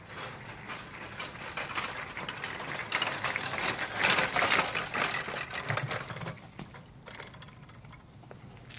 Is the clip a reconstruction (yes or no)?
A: no